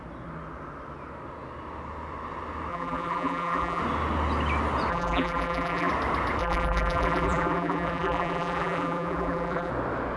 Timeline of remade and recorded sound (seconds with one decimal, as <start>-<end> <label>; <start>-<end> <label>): 0.0-2.7 recorded; 2.7-3.8 remade; 3.8-4.9 recorded; 4.9-5.9 remade; 5.9-6.4 recorded; 6.4-9.7 remade; 9.7-10.2 recorded